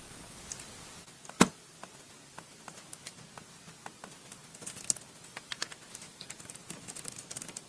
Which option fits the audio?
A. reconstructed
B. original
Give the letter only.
B